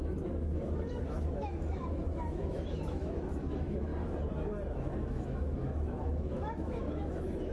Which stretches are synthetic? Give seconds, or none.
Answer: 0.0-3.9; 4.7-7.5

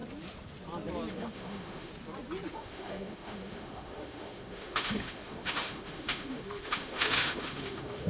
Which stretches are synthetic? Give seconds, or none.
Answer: 1.1-1.9; 2.5-8.1